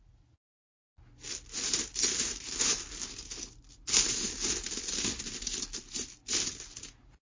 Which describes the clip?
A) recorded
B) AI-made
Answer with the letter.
A